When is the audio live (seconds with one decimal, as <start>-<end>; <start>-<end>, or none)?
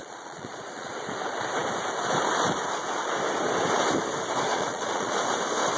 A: 0.9-4.5; 5.2-5.8